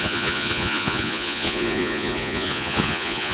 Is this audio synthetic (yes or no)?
yes